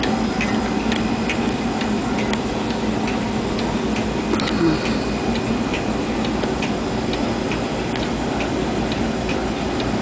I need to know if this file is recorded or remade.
recorded